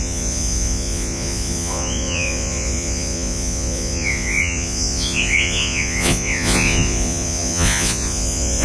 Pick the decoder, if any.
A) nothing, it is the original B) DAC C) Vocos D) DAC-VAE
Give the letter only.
C